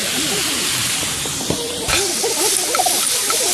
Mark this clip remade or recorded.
recorded